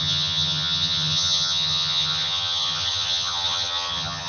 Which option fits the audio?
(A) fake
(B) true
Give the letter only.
A